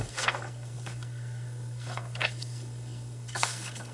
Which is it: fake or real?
fake